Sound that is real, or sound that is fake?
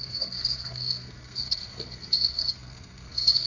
fake